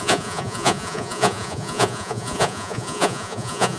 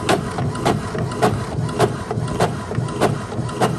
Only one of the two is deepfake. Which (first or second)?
first